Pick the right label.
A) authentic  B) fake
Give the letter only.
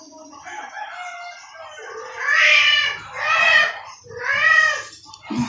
A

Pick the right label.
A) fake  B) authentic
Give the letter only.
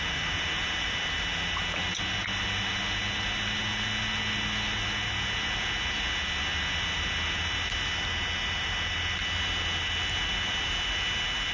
B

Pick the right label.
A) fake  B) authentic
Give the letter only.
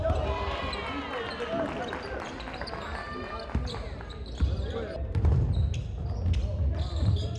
B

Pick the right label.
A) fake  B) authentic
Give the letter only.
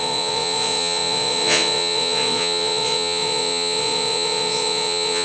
A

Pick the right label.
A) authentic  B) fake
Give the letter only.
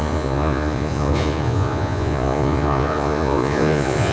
B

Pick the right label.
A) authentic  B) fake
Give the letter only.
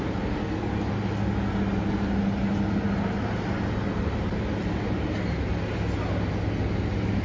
A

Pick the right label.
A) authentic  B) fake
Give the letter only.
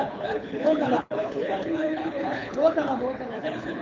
B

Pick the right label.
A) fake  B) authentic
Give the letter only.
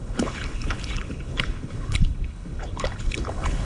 A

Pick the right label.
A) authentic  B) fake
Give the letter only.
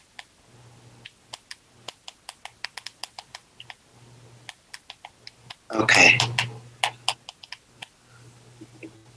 A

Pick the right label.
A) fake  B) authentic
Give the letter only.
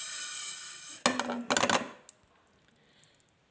B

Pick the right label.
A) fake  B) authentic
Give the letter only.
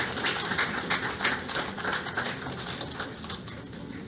B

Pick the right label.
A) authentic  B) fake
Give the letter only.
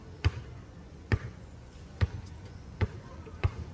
B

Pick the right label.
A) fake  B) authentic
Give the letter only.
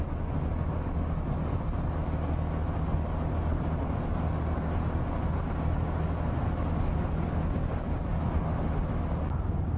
B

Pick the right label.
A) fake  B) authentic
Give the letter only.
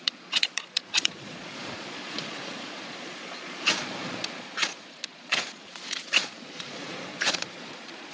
A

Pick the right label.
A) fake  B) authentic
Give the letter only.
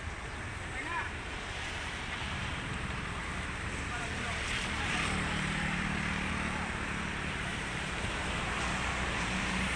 A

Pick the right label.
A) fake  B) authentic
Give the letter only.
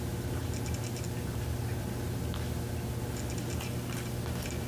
B